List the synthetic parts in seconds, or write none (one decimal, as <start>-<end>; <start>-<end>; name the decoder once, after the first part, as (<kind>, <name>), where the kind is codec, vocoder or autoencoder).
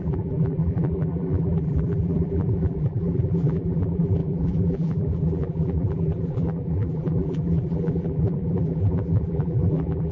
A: 0.0-10.1 (vocoder, BigVGAN v2)